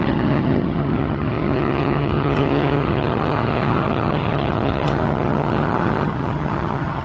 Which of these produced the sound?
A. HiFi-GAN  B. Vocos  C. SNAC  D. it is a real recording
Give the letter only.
A